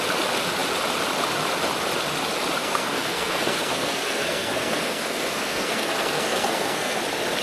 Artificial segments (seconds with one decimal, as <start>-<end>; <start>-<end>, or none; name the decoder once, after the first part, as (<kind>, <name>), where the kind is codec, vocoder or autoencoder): 2.6-7.0 (codec, SNAC)